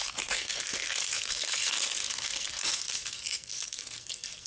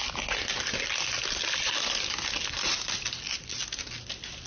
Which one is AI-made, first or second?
first